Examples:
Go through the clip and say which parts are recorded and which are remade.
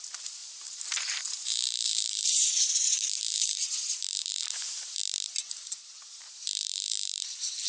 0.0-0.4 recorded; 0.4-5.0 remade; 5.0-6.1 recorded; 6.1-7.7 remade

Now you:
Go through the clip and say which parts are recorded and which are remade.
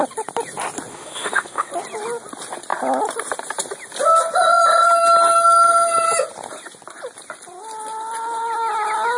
0.0-0.9 recorded; 0.9-1.7 remade; 1.7-9.2 recorded